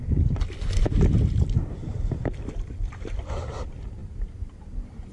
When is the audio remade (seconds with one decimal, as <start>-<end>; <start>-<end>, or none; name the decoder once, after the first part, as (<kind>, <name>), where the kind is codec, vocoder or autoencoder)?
none